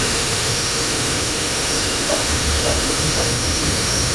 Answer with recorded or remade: remade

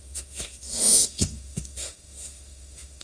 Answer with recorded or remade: remade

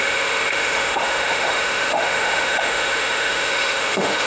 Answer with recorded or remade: remade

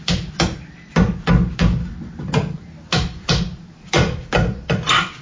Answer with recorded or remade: recorded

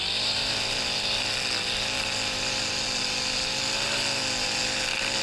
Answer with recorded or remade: recorded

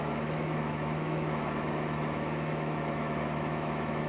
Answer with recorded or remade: remade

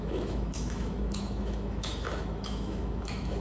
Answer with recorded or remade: remade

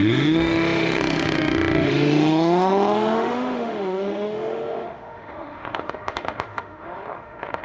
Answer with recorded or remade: remade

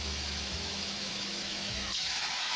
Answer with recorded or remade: remade